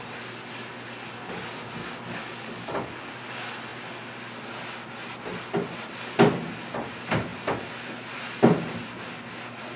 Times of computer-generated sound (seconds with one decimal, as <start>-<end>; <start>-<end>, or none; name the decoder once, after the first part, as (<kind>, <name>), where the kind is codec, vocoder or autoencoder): 1.8-3.2 (codec, DAC)